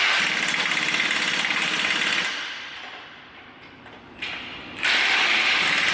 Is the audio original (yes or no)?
yes